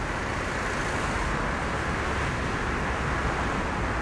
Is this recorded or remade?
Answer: recorded